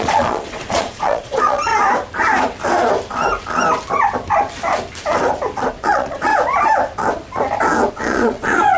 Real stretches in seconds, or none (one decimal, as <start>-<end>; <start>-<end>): 1.7-5.7; 6.3-7.9

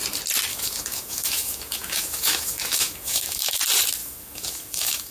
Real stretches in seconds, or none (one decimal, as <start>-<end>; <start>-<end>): 0.0-0.5; 3.6-4.0

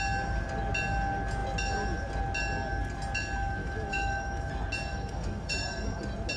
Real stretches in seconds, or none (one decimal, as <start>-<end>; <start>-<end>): 0.0-3.6; 4.5-4.9; 6.0-6.4